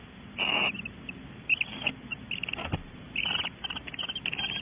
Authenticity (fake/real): real